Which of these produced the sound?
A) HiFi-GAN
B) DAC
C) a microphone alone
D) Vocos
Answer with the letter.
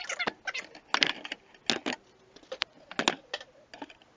C